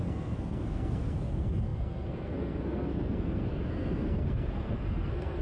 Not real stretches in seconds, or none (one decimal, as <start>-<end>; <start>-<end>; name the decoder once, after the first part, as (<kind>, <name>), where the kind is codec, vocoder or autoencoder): 0.0-5.4 (codec, SNAC)